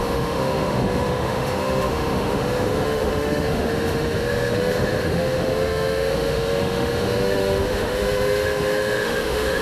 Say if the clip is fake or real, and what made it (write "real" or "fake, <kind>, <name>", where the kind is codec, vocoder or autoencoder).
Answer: fake, autoencoder, DAC-VAE